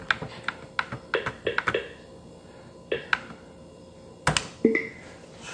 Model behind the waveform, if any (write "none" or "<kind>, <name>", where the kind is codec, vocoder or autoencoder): none